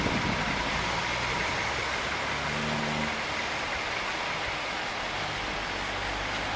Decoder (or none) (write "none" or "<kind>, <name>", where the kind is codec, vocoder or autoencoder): none